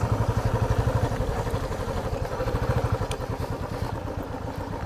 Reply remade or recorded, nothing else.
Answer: recorded